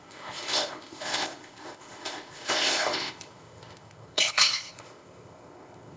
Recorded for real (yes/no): no